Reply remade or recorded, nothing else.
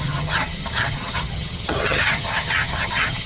remade